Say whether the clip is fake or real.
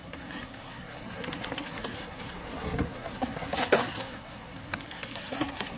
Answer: fake